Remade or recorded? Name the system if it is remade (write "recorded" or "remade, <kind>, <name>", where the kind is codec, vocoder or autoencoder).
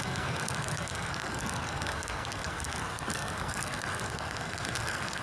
remade, codec, SNAC